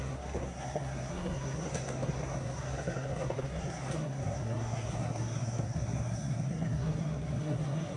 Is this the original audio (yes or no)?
no